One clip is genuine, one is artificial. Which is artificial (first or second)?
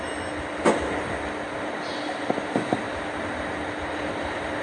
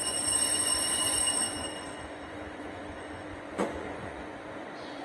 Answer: second